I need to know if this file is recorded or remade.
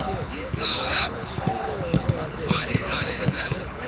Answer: remade